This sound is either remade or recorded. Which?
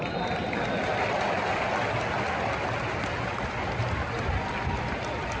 recorded